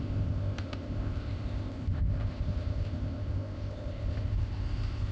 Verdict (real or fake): fake